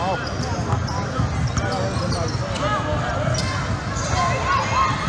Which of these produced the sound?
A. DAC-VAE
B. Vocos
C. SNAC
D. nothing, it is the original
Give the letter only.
D